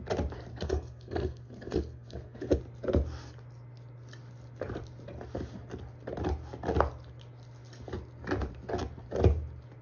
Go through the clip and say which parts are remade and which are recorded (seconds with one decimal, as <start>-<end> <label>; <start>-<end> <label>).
0.0-0.5 recorded; 0.5-2.6 remade; 2.6-9.8 recorded